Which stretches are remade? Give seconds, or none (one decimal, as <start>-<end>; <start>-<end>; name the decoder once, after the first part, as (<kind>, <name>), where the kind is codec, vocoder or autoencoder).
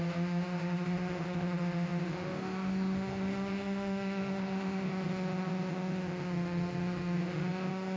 0.0-8.0 (autoencoder, DAC-VAE)